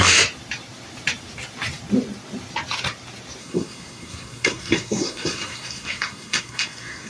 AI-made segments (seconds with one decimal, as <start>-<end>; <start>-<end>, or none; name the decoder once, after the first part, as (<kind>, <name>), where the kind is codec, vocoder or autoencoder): 3.4-7.1 (codec, SNAC)

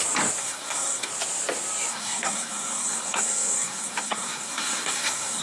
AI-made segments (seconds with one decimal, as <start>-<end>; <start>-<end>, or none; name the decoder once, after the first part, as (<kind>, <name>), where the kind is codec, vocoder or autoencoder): 0.4-1.1 (codec, SNAC); 1.9-5.4